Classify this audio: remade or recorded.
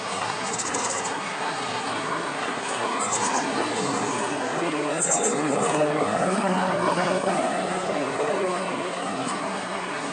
remade